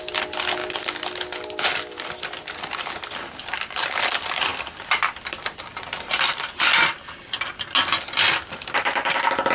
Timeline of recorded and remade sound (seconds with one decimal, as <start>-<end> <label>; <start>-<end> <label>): 0.0-9.5 recorded